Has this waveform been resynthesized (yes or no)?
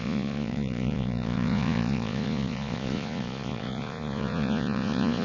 yes